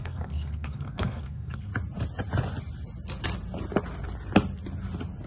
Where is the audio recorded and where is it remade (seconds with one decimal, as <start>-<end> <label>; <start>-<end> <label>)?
0.0-1.7 remade; 1.7-5.3 recorded